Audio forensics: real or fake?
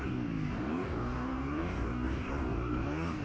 fake